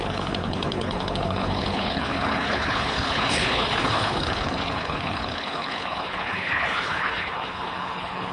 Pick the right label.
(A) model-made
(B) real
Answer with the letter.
A